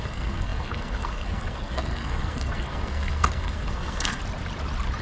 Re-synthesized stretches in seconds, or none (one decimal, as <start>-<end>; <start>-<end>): 0.0-4.2